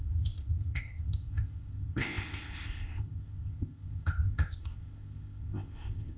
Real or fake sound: fake